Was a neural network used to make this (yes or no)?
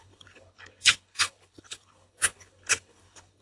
yes